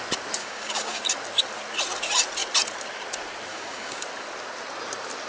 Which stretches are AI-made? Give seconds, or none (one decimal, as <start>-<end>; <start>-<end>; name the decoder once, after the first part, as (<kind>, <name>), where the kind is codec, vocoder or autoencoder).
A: 0.4-1.0 (codec, DAC); 3.5-4.0